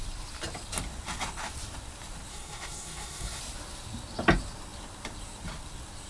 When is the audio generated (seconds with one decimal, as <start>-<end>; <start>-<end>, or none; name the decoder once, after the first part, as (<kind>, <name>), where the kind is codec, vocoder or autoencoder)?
2.3-3.4 (codec, SNAC)